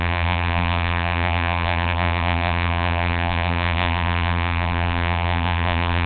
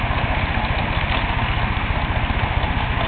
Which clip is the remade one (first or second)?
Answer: first